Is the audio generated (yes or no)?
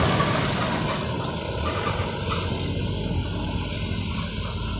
no